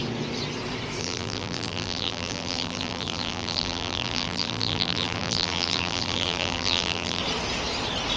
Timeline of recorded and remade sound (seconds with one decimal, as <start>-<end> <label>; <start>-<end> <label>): 0.0-1.0 recorded; 1.0-7.2 remade; 7.2-8.2 recorded